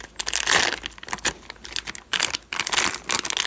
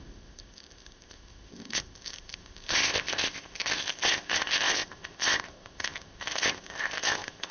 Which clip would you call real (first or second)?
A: first